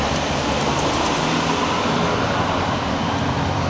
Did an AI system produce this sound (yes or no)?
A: yes